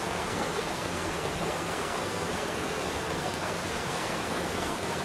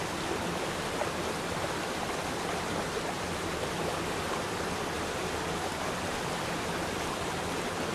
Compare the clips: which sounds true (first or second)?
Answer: second